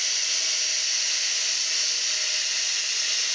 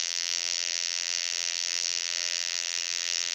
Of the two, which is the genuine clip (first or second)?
first